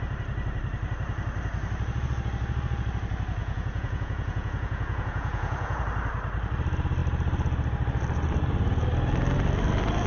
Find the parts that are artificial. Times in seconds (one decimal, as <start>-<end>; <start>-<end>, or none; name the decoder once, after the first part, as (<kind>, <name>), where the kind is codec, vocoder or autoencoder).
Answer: 3.4-5.8 (vocoder, Vocos)